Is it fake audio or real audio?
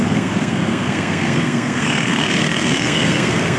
fake